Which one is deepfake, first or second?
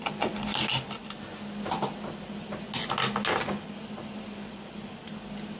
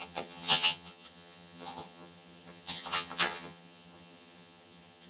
second